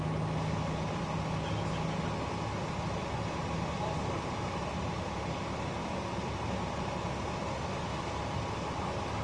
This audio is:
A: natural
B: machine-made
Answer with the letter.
A